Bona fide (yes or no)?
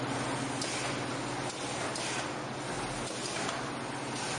yes